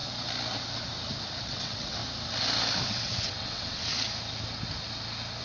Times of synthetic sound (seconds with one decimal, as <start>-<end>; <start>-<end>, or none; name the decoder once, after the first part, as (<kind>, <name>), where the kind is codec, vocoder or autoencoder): 1.4-2.0 (vocoder, WaveNeXt); 2.8-3.9